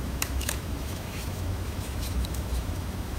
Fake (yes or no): yes